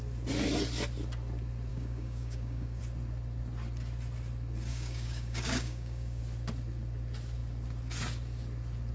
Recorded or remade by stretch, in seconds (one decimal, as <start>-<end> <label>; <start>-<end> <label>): 0.0-1.7 recorded; 1.7-2.8 remade; 2.8-4.7 recorded; 4.7-6.2 remade; 6.2-8.9 recorded